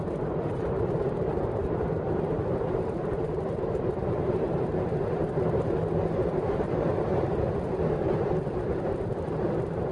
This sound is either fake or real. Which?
fake